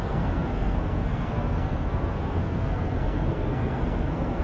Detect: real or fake fake